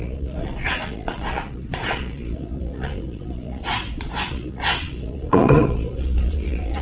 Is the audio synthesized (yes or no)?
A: yes